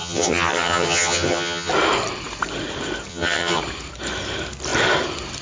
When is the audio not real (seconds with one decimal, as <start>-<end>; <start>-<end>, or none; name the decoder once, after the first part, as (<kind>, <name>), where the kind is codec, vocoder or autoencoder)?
0.0-1.7 (vocoder, HiFi-GAN); 3.1-3.6